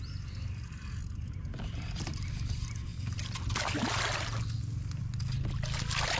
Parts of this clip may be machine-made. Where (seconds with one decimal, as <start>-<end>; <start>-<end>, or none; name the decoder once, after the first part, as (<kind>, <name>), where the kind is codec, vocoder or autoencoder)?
none